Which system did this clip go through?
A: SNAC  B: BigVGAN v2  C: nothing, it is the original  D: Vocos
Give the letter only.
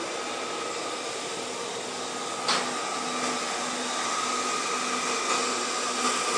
C